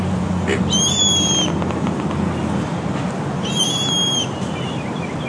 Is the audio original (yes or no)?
yes